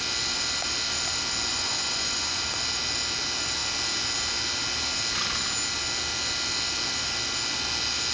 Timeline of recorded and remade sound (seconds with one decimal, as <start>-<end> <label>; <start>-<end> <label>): 0.0-1.5 recorded; 1.5-2.4 remade; 2.4-8.1 recorded